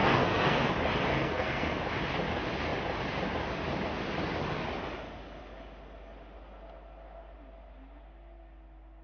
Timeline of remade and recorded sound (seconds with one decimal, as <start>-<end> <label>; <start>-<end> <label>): 0.0-0.7 remade; 0.7-1.1 recorded; 1.1-1.8 remade; 1.8-9.0 recorded